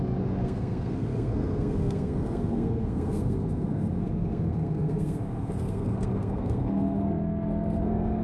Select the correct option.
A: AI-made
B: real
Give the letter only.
A